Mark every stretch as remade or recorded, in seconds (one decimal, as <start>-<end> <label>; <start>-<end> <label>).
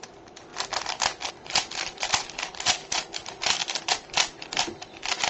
0.0-0.5 remade; 0.5-1.3 recorded; 1.3-2.5 remade; 2.5-3.2 recorded; 3.2-5.3 remade